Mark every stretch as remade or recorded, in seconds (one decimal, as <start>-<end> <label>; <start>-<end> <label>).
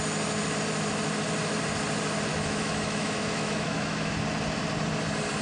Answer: 0.0-2.3 recorded; 2.3-4.1 remade; 4.1-5.4 recorded